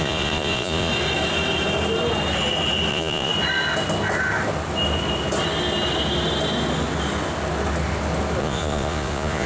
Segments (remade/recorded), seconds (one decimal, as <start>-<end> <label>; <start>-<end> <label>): 0.0-0.9 remade; 0.9-2.9 recorded; 2.9-3.3 remade; 3.3-8.4 recorded; 8.4-9.5 remade